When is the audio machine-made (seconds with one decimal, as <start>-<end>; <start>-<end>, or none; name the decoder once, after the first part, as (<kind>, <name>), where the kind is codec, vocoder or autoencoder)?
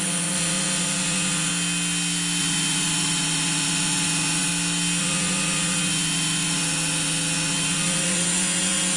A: 0.0-1.5 (vocoder, Vocos); 2.4-4.5; 5.0-9.0